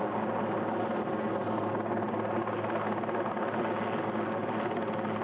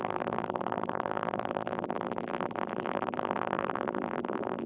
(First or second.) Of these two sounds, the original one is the first